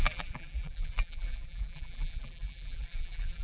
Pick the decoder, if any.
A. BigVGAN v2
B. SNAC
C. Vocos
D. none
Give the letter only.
A